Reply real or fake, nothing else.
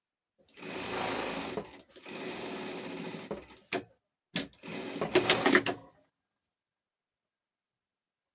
real